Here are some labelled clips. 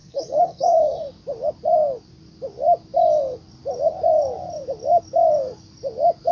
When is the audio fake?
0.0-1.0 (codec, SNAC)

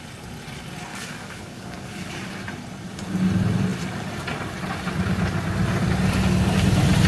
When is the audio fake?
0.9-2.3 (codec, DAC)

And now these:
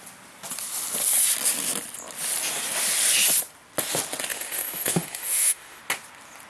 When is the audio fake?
4.3-5.8 (autoencoder, DAC-VAE)